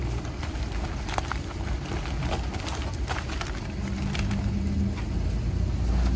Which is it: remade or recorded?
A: recorded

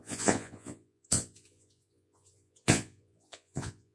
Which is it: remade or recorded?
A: remade